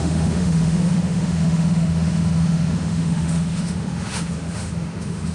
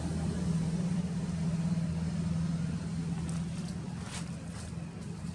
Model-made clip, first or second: first